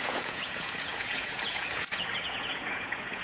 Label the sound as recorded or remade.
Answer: remade